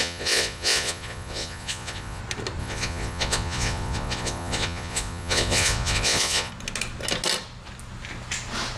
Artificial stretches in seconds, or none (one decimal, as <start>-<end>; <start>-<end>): 0.0-2.2; 2.6-6.5

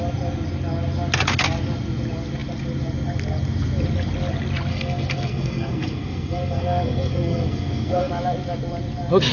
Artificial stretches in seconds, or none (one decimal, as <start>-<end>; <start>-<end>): 4.7-8.1